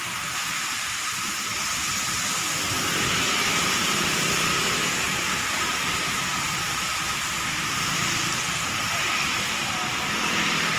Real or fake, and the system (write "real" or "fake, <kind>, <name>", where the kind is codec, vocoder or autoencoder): fake, vocoder, BigVGAN v2